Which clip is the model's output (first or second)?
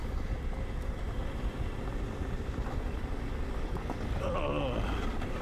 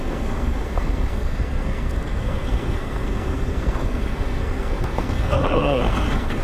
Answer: second